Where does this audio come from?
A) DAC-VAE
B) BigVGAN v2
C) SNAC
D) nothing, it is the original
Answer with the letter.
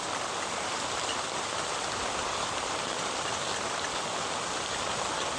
D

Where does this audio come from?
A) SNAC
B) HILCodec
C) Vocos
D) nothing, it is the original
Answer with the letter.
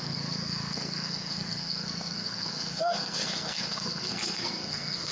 A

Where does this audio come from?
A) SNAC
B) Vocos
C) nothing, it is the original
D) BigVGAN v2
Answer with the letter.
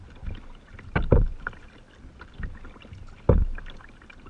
C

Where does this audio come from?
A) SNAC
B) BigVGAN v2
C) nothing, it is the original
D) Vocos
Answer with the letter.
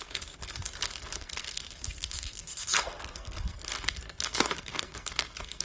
A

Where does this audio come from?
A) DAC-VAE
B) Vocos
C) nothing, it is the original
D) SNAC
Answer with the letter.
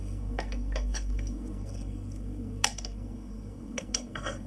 D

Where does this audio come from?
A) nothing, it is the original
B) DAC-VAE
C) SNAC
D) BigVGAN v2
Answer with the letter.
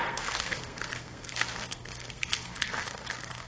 C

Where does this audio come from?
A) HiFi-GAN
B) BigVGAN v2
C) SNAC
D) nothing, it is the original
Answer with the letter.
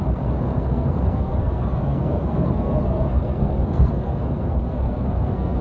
C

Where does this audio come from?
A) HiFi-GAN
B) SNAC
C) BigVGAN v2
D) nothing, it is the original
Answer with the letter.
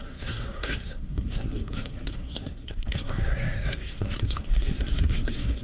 B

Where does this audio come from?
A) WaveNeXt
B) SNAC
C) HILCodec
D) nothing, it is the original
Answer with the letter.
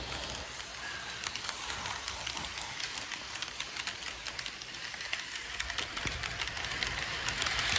D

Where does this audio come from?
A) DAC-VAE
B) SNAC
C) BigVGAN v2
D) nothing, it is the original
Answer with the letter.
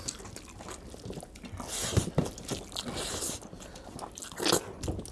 D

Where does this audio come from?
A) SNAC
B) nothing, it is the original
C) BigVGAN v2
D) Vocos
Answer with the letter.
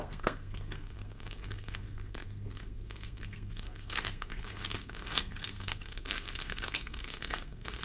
A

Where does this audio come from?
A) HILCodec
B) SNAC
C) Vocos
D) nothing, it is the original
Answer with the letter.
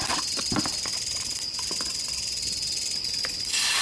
D